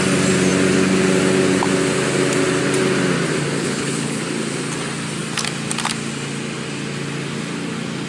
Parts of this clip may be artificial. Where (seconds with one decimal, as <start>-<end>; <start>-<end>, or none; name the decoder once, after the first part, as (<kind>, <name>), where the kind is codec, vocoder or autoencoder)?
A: 3.6-4.2 (codec, HILCodec)